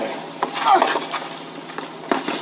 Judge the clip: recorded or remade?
recorded